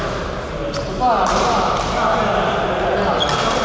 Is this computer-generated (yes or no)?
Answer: no